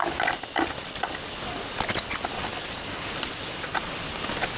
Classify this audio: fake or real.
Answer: real